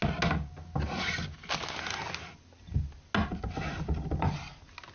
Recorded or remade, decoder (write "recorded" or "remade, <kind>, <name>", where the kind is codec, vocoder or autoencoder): recorded